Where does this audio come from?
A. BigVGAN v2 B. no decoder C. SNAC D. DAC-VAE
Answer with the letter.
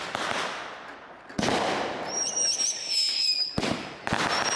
B